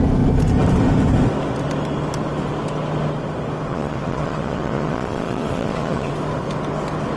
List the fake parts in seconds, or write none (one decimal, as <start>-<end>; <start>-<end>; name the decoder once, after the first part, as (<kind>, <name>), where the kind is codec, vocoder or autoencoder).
3.7-6.1 (vocoder, Vocos)